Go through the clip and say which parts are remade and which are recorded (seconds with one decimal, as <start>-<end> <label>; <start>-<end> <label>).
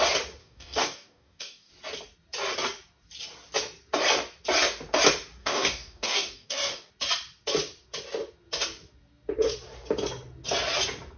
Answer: 0.0-0.4 recorded; 0.4-1.7 remade; 1.7-5.4 recorded; 5.4-6.9 remade; 6.9-11.2 recorded